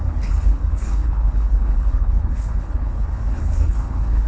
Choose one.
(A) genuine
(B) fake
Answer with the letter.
B